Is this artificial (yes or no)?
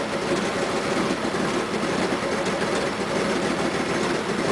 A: no